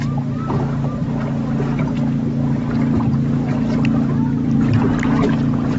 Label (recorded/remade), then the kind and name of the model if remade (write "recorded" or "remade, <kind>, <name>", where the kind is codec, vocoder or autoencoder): recorded